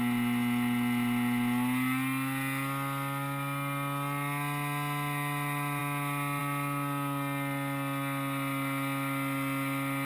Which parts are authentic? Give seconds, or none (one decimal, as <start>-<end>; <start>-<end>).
0.0-10.0